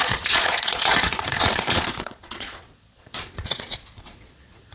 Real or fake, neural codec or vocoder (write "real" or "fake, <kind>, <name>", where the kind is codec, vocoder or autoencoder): fake, vocoder, Vocos